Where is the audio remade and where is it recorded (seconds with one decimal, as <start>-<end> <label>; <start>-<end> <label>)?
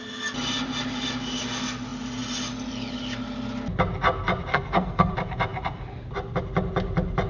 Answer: 0.0-4.5 recorded; 4.5-5.1 remade; 5.1-7.3 recorded